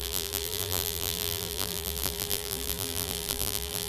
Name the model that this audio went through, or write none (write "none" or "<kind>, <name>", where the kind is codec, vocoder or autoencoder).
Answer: vocoder, BigVGAN v2